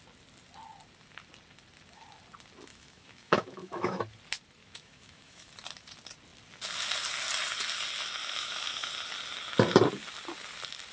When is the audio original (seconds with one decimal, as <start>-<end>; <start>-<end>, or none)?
0.0-2.7; 4.0-4.6; 5.5-8.2; 8.9-10.9